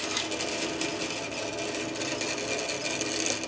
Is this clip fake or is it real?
real